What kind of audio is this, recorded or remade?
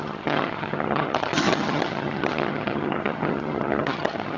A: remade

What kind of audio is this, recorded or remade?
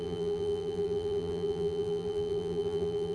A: remade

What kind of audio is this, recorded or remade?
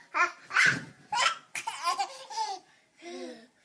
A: remade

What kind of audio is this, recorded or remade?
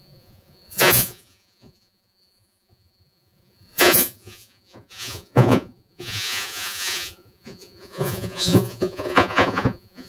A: remade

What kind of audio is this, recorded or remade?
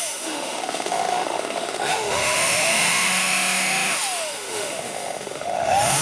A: remade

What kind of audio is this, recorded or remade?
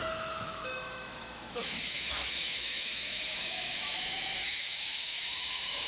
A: remade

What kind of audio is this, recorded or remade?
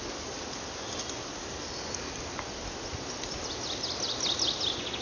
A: recorded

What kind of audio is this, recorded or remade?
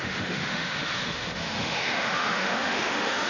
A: remade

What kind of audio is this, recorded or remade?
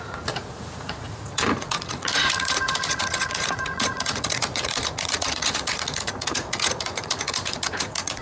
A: remade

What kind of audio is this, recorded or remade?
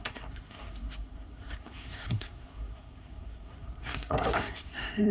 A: remade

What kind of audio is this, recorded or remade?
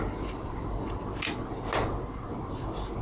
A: recorded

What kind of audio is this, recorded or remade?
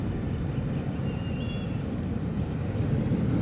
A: recorded